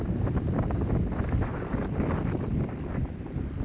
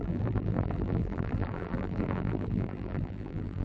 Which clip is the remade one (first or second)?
second